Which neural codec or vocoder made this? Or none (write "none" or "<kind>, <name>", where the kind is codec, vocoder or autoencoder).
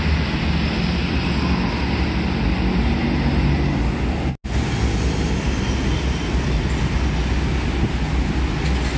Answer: none